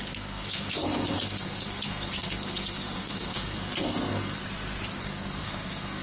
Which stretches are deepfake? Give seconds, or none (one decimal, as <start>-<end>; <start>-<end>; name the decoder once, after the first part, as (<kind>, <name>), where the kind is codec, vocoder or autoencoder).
0.0-4.4 (codec, SNAC); 5.0-6.0